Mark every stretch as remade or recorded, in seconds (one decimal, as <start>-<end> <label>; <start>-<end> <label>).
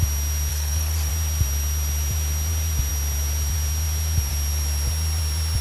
0.0-0.5 recorded; 0.5-1.1 remade; 1.1-5.6 recorded